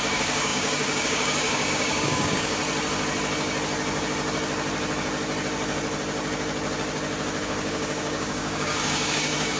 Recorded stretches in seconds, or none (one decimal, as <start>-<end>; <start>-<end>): 2.6-7.4